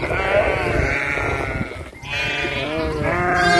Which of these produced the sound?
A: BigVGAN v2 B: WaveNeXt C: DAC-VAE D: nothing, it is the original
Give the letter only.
D